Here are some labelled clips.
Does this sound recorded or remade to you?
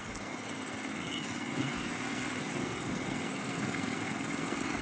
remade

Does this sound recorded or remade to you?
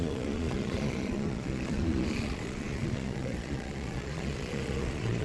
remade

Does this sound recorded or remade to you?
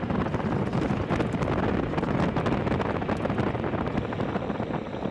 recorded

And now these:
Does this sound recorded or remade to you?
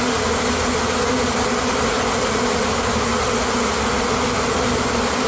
recorded